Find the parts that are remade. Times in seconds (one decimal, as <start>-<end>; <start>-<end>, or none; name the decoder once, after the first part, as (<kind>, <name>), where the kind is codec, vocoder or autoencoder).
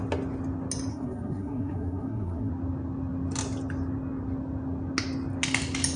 0.9-2.5 (codec, SNAC)